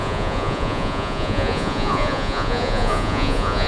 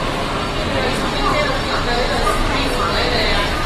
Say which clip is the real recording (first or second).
second